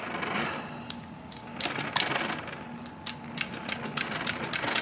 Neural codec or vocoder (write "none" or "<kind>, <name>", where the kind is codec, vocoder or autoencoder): none